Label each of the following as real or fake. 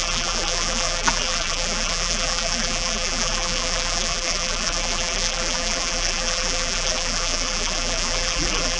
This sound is fake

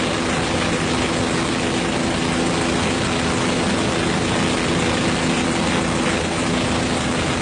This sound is real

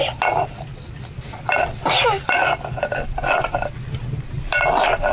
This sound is real